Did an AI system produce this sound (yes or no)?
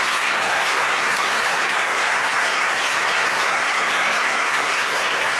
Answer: yes